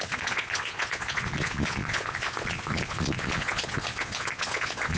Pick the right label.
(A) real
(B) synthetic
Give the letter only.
B